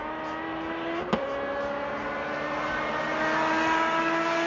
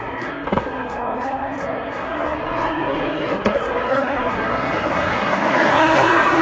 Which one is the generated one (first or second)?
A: second